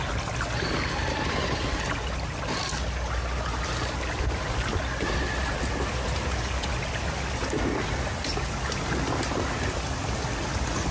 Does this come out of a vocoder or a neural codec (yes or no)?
no